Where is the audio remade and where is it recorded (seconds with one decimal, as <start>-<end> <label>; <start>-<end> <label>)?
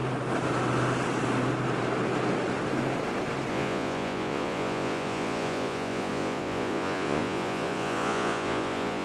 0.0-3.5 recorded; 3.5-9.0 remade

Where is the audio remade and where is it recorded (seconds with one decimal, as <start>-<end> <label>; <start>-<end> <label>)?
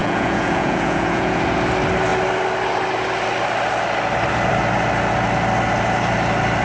0.0-1.4 remade; 1.4-6.6 recorded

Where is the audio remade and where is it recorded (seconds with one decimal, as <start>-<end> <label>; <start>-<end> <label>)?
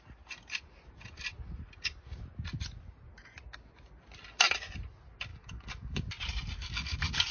0.0-5.3 recorded; 5.3-6.0 remade; 6.0-6.6 recorded; 6.6-7.3 remade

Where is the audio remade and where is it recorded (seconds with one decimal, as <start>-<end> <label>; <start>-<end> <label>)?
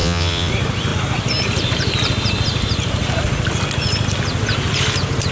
0.0-0.5 remade; 0.5-5.3 recorded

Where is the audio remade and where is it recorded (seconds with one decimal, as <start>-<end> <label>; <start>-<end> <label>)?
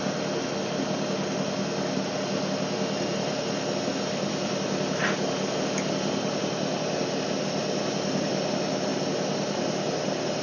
0.0-10.4 recorded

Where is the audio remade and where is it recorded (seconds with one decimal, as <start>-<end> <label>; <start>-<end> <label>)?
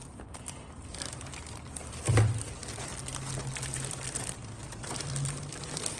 0.0-1.9 recorded; 1.9-2.6 remade; 2.6-3.9 recorded; 3.9-6.0 remade